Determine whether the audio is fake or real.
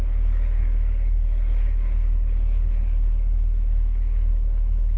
fake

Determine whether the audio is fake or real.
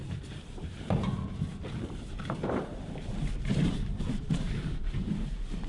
fake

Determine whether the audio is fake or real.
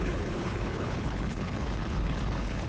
fake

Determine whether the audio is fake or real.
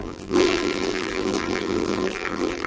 fake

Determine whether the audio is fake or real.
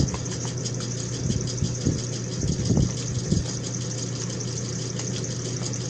real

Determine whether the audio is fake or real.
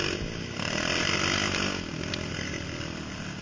real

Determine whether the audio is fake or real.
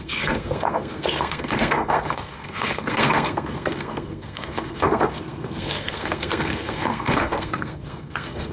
fake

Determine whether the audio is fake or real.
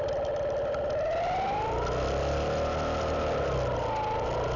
real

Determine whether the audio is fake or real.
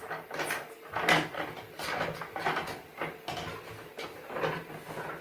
real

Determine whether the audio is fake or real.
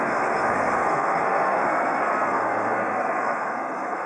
fake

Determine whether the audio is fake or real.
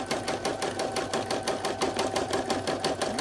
real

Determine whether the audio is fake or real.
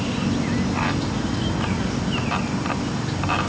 real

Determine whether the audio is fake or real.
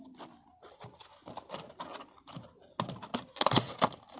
real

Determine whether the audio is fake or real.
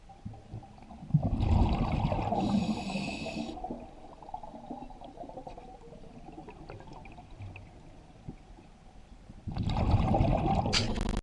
real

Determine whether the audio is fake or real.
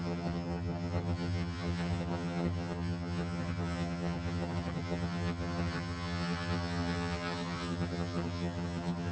fake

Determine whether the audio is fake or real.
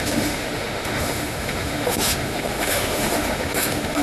fake